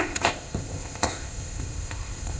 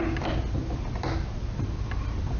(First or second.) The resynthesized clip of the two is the first